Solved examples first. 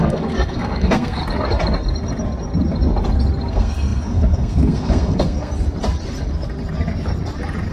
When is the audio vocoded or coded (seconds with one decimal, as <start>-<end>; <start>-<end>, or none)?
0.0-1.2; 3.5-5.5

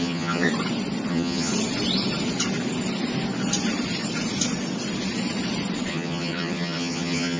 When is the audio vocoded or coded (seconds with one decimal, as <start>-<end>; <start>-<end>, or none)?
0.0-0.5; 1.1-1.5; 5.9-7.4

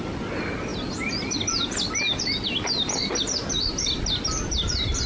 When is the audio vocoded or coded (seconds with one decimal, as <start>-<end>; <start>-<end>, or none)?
none